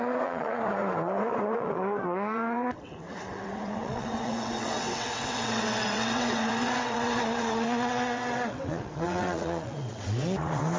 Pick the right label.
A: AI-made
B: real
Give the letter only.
A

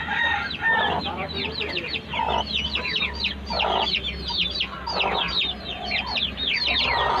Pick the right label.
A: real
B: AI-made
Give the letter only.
A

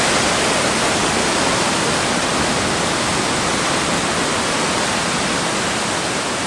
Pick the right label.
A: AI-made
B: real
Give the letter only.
B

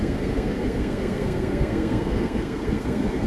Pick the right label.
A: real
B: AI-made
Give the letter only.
B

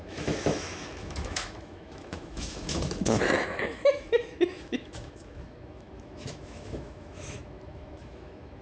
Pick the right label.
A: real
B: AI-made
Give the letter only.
B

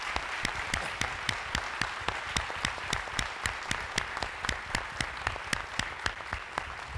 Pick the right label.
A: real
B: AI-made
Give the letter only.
A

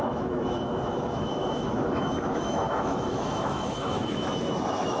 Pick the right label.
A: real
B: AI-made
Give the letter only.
B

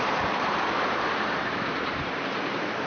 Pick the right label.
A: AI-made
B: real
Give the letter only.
A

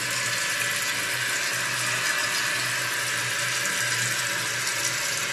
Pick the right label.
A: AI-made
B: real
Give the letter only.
B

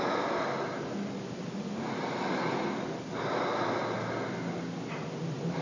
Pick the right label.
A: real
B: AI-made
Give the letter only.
A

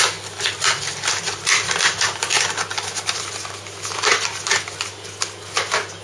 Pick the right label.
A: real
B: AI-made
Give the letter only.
A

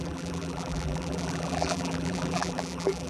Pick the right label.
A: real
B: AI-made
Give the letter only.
B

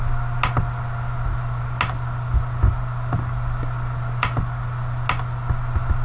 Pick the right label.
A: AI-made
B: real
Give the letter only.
B